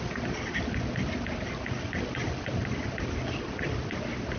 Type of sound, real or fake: real